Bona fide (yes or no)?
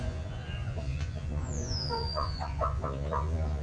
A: no